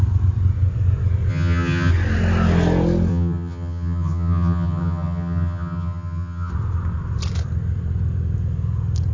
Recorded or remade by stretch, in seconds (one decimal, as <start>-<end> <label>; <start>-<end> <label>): 0.0-1.3 recorded; 1.3-1.9 remade; 1.9-3.1 recorded; 3.1-6.5 remade; 6.5-9.1 recorded